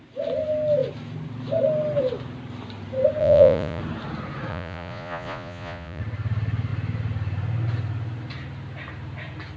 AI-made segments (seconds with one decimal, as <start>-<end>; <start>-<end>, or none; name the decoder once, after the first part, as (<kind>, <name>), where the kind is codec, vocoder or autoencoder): 3.2-3.8 (vocoder, Vocos); 4.5-6.0